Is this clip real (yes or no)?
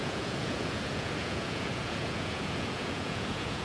no